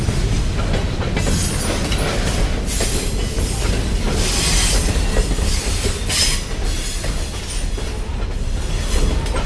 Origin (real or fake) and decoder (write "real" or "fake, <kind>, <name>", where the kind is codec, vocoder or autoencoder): real